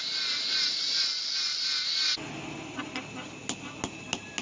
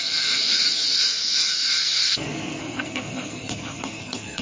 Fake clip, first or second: second